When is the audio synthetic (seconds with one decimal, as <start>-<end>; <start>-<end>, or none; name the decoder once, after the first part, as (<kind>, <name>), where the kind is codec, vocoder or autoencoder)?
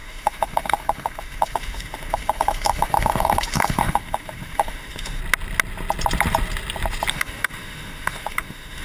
0.0-5.2 (autoencoder, DAC-VAE); 7.1-8.8